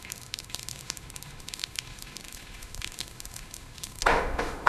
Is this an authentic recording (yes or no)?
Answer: no